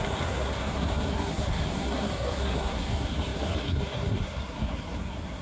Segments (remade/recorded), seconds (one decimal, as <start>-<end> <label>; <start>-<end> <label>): 0.0-5.4 remade

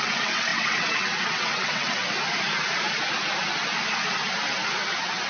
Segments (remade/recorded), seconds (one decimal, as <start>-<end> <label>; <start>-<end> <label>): 0.0-2.0 remade; 2.0-5.3 recorded

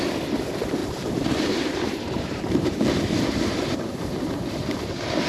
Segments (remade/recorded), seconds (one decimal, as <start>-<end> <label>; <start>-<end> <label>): 0.0-0.8 recorded; 0.8-4.0 remade; 4.0-5.3 recorded

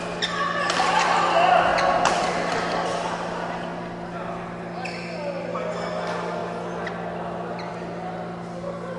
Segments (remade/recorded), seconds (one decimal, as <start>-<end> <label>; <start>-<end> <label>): 0.0-9.0 recorded